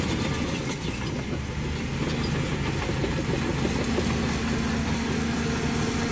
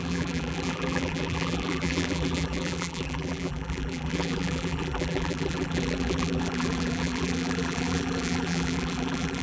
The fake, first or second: second